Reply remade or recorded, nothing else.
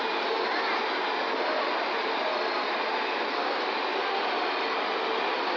recorded